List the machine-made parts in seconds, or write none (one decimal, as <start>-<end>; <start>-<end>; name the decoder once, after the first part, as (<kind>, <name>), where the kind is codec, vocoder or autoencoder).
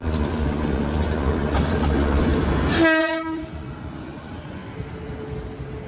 0.0-2.3 (vocoder, Vocos); 3.0-4.6